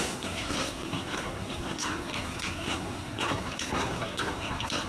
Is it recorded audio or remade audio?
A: remade